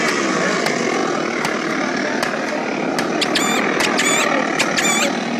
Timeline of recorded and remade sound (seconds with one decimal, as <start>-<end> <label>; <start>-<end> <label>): 0.0-5.4 recorded

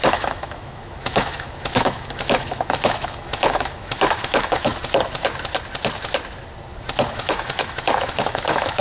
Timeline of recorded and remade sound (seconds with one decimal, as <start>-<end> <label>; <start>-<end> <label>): 0.0-4.7 remade; 4.7-7.1 recorded; 7.1-8.8 remade

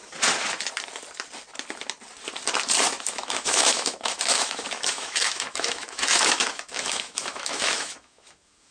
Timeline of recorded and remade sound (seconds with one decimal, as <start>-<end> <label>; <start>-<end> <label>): 0.0-3.2 recorded; 3.2-8.7 remade

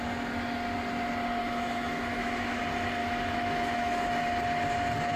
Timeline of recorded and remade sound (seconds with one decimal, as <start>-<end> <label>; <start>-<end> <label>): 0.0-1.4 recorded; 1.4-2.6 remade; 2.6-3.0 recorded; 3.0-4.1 remade; 4.1-5.2 recorded

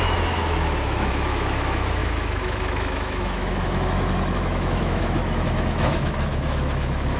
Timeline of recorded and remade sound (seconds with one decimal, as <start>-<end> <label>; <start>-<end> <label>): 0.0-7.2 remade

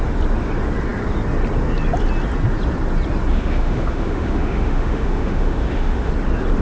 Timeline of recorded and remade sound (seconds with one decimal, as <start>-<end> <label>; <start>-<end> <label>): 0.0-3.3 recorded; 3.3-6.1 remade; 6.1-6.6 recorded

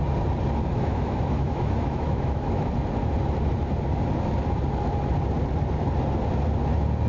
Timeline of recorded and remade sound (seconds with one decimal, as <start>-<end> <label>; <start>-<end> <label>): 0.0-0.7 recorded; 0.7-2.7 remade; 2.7-7.1 recorded

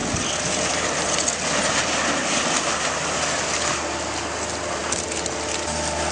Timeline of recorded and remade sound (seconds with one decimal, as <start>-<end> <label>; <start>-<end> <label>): 0.0-6.1 recorded